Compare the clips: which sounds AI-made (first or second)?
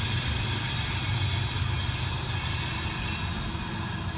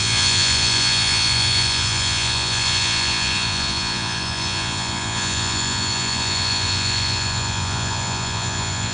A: second